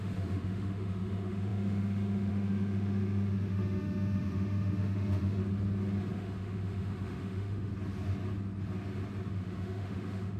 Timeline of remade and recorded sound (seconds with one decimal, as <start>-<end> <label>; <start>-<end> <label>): 0.0-5.4 remade; 5.4-6.1 recorded; 6.1-7.7 remade; 7.7-9.3 recorded; 9.3-10.4 remade